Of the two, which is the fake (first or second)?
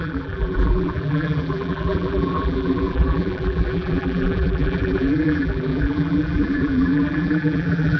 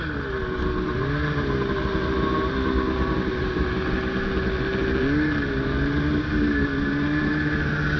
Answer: first